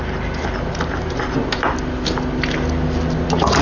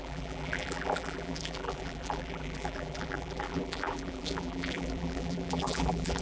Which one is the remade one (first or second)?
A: second